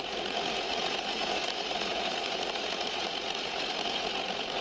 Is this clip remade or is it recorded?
remade